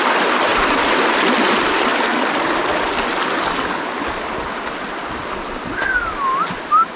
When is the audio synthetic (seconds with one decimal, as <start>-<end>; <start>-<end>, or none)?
none